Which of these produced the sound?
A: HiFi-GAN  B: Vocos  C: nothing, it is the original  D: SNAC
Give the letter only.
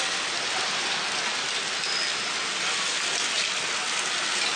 C